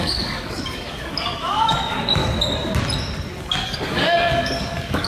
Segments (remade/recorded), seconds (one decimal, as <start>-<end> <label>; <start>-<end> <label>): 0.0-2.2 remade; 2.2-3.4 recorded; 3.4-5.1 remade